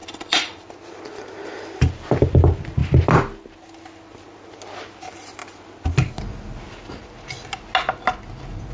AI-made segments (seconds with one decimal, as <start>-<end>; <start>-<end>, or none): 0.0-0.7